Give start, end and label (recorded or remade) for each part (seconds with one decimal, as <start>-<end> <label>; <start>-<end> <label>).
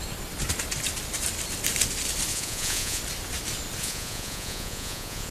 0.0-2.3 recorded; 2.3-3.0 remade; 3.0-3.8 recorded; 3.8-5.3 remade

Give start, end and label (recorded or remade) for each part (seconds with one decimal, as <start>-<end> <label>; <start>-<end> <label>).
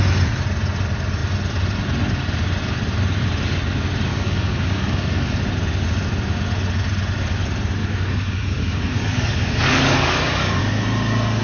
0.0-4.1 recorded; 4.1-5.4 remade; 5.4-7.8 recorded; 7.8-10.6 remade; 10.6-11.4 recorded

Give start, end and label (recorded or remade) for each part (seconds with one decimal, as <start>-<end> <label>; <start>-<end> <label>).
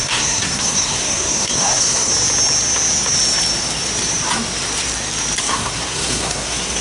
0.0-2.1 remade; 2.1-5.4 recorded; 5.4-6.8 remade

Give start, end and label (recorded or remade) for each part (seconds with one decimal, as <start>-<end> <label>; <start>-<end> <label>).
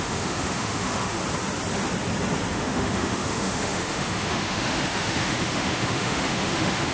0.0-1.2 remade; 1.2-2.5 recorded; 2.5-6.9 remade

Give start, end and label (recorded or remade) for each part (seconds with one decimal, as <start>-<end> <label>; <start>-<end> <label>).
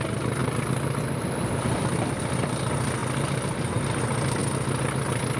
0.0-0.4 recorded; 0.4-2.2 remade; 2.2-3.0 recorded; 3.0-3.7 remade; 3.7-5.4 recorded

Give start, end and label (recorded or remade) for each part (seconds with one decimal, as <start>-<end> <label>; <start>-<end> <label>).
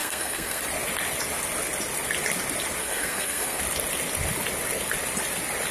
0.0-0.6 remade; 0.6-2.8 recorded; 2.8-3.6 remade; 3.6-5.7 recorded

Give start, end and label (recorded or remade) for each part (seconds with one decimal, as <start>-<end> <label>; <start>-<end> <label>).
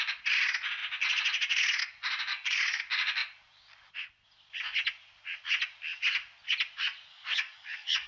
0.0-2.3 recorded; 2.3-2.8 remade; 2.8-7.1 recorded; 7.1-8.1 remade